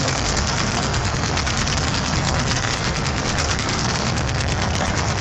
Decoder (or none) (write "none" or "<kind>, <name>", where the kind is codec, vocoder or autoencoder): codec, SNAC